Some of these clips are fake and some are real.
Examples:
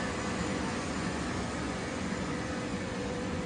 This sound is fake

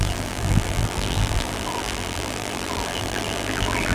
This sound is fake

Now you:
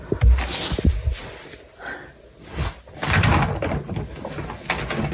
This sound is real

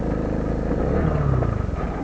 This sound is real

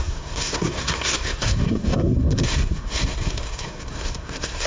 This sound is fake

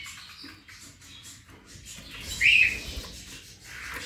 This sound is real